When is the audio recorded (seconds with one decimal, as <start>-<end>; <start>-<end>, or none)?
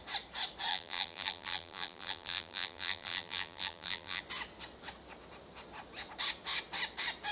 0.0-0.7; 4.2-7.3